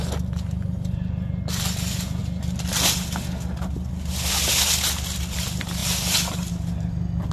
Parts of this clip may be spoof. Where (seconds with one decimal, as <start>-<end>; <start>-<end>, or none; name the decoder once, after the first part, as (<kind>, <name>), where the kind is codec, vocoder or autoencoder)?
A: none